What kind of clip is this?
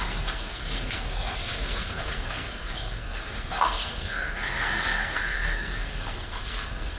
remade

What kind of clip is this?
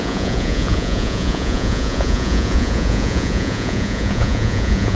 remade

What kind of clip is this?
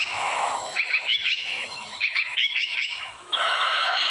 remade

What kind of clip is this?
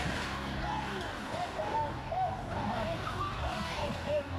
remade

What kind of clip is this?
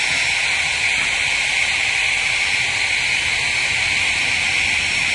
recorded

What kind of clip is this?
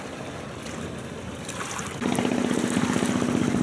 recorded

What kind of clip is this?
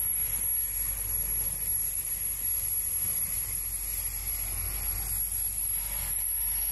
recorded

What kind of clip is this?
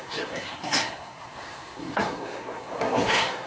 remade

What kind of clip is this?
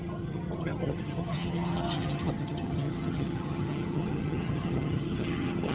remade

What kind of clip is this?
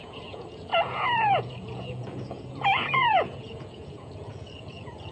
remade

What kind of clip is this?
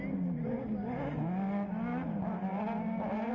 recorded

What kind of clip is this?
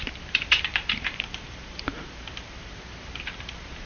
remade